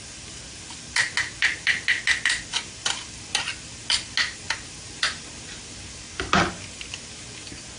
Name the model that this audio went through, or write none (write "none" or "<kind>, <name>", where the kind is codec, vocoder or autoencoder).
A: none